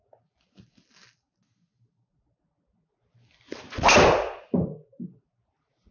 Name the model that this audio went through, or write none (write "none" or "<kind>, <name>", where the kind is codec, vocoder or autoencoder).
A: none